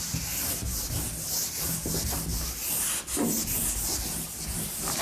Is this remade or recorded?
recorded